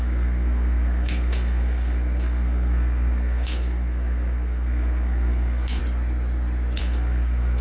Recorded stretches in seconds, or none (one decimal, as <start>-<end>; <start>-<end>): 5.8-6.8